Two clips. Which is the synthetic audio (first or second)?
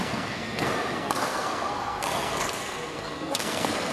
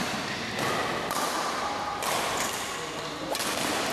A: first